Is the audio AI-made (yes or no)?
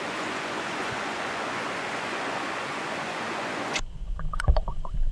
yes